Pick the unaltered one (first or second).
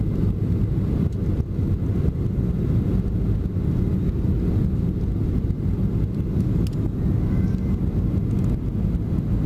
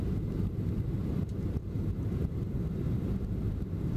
first